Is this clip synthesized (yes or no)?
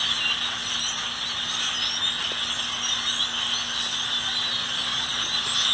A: no